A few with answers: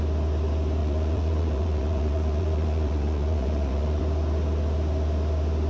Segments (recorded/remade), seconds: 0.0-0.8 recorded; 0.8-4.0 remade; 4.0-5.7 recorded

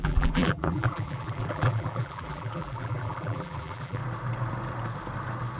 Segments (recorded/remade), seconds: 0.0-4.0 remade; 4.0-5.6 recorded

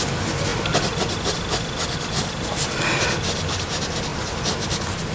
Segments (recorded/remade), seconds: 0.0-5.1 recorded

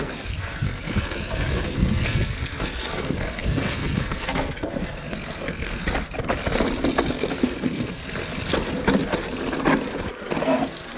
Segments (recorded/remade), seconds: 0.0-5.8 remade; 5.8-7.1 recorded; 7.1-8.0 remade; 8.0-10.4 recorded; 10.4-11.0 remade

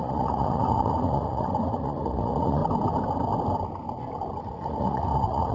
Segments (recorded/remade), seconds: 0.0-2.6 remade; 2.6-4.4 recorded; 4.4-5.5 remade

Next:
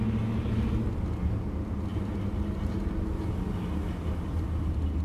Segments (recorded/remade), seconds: 0.0-5.0 recorded